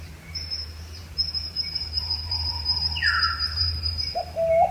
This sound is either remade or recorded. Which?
remade